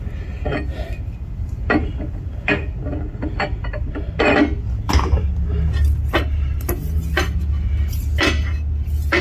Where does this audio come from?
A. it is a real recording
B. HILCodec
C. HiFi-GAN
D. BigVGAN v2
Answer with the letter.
A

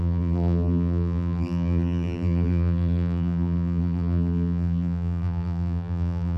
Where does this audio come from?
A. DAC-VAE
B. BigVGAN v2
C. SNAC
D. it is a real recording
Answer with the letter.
B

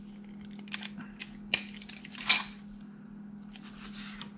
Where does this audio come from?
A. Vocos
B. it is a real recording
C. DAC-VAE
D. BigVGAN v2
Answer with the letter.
B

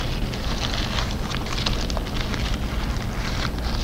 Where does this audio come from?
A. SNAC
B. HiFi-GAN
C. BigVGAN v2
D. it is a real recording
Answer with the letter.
D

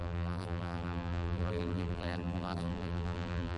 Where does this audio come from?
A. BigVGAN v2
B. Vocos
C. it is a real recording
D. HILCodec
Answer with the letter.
A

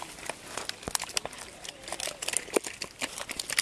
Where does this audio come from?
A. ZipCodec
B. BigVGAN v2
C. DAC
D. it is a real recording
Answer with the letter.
D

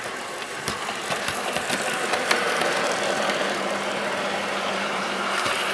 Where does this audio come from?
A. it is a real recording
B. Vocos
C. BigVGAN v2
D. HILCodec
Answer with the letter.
C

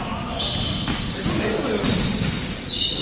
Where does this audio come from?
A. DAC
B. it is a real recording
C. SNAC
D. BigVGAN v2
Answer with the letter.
B